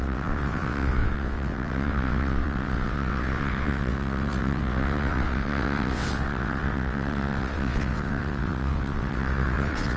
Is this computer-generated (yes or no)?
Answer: yes